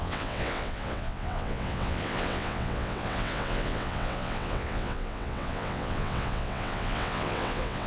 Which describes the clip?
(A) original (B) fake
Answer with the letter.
B